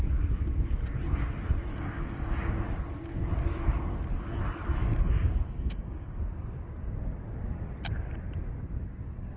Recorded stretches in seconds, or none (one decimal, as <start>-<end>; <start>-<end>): 0.0-1.7; 2.6-4.8; 6.2-9.4